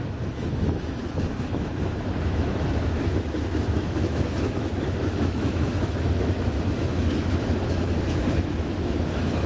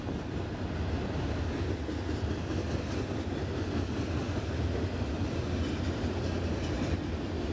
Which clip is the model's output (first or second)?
first